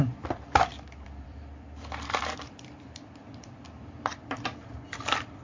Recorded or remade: remade